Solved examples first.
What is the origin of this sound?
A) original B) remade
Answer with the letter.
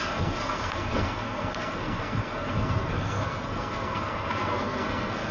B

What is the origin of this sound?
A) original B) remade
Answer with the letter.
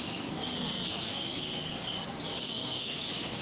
B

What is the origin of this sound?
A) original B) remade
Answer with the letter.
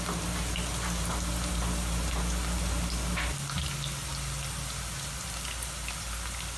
A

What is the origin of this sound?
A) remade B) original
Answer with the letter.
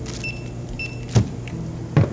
B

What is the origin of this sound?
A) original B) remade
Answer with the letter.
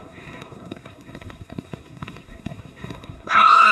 B